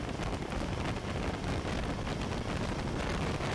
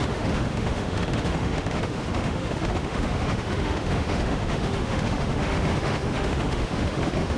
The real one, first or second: first